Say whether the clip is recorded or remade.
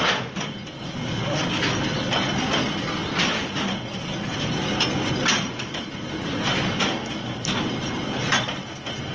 recorded